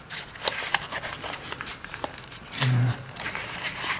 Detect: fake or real fake